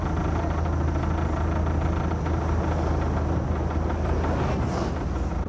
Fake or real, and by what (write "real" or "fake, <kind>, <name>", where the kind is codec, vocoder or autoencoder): real